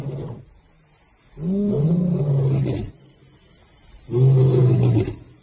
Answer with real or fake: real